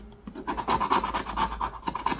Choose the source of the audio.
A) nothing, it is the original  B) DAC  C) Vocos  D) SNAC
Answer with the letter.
A